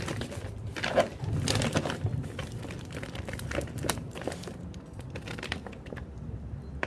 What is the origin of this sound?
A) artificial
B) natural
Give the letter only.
B